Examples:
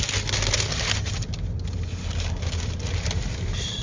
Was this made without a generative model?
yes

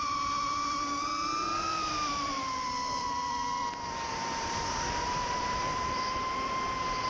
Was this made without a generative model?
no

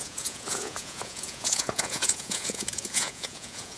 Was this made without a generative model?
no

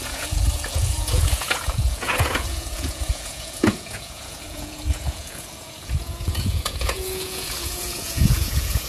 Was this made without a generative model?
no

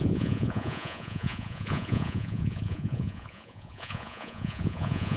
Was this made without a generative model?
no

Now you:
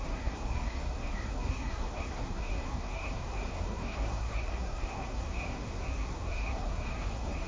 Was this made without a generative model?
no